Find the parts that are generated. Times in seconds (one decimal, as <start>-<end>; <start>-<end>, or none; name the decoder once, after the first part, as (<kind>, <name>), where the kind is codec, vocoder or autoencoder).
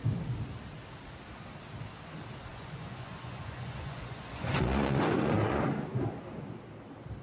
2.5-5.6 (vocoder, Vocos)